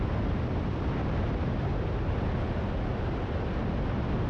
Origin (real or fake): real